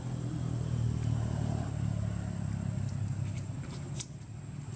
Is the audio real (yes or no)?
yes